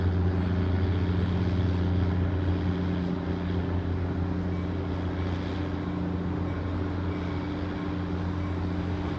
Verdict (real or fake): real